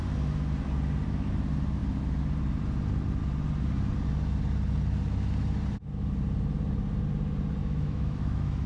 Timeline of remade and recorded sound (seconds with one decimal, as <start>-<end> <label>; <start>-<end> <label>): 0.0-7.6 recorded; 7.6-8.7 remade